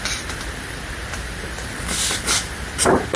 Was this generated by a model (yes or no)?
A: no